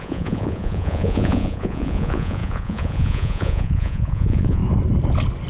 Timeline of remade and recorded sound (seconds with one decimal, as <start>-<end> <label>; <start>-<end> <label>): 0.0-4.6 remade; 4.6-5.5 recorded